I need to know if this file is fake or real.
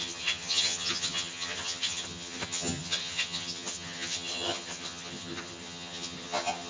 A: fake